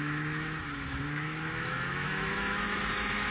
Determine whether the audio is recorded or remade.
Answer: remade